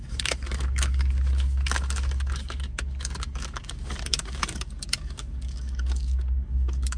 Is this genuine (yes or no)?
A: no